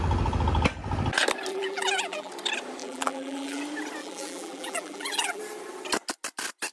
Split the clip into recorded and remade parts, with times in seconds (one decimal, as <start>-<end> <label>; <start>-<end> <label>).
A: 0.0-1.5 recorded; 1.5-2.3 remade; 2.3-2.8 recorded; 2.8-3.6 remade; 3.6-4.0 recorded; 4.0-5.4 remade; 5.4-6.7 recorded